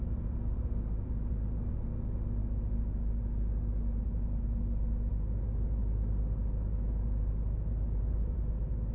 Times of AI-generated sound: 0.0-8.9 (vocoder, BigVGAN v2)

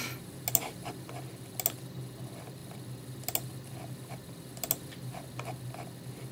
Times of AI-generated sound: none

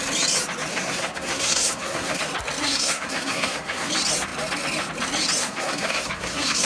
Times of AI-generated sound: 0.7-2.2 (codec, SNAC); 2.6-3.9; 5.4-6.7

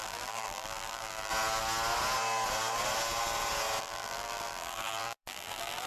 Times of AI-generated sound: 0.0-1.3 (vocoder, BigVGAN v2); 3.8-5.9

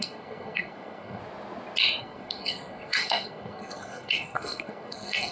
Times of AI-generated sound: 0.0-1.2 (codec, SNAC); 2.0-5.3